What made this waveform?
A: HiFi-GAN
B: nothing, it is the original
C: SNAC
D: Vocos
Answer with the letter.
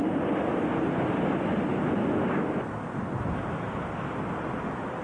B